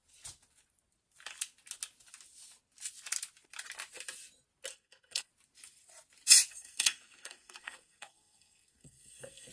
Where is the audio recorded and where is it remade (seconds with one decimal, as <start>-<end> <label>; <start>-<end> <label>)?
0.0-4.7 recorded; 4.7-5.3 remade; 5.3-6.5 recorded; 6.5-9.5 remade